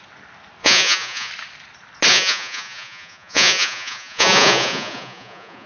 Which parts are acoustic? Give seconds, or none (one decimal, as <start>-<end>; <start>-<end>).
0.0-0.6; 1.3-2.1